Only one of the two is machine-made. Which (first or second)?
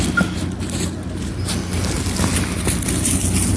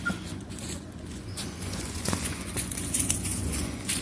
second